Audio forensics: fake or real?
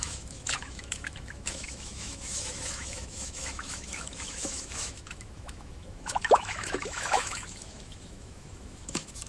fake